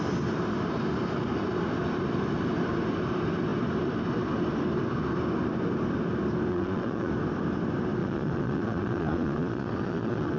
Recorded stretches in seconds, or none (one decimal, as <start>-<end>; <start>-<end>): 0.0-6.5; 7.1-8.0

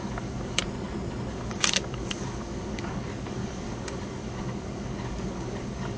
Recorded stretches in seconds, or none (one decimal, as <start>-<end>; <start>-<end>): 0.6-1.3

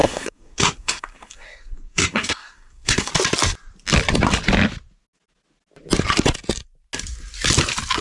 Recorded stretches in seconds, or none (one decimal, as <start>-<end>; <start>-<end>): 3.1-8.0

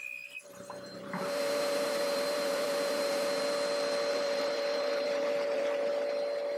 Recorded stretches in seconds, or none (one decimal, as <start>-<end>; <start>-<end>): 0.0-0.4; 3.4-4.1; 5.9-6.6

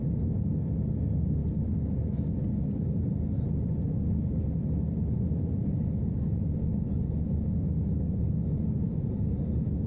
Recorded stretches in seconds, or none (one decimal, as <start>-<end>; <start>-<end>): 0.0-9.9

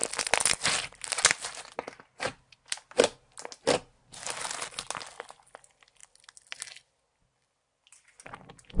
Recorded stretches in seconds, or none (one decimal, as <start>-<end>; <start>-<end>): 0.0-8.8

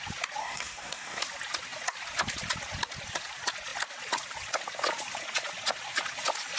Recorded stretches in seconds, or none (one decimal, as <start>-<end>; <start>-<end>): 0.0-0.4; 1.2-6.6